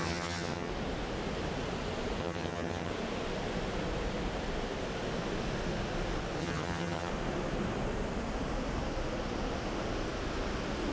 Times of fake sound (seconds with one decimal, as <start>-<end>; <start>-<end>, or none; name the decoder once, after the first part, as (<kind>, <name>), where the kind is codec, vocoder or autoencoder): 0.0-0.7 (vocoder, HiFi-GAN); 2.2-2.9; 6.4-7.1